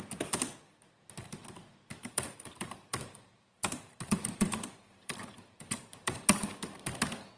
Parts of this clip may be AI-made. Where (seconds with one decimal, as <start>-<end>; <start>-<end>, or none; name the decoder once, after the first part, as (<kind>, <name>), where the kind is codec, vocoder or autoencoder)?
2.0-6.4 (vocoder, BigVGAN v2)